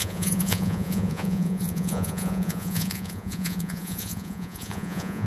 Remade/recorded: remade